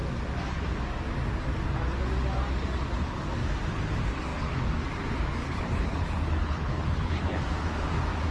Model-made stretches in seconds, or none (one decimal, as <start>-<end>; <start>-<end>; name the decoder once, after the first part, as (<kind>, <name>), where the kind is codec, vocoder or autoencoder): 5.4-7.4 (codec, HILCodec)